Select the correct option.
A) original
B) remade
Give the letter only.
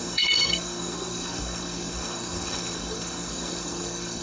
B